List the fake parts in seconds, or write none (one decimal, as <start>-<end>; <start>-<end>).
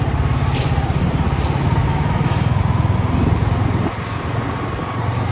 1.8-2.6